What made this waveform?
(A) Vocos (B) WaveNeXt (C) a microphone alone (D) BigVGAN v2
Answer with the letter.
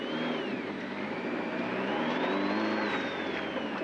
D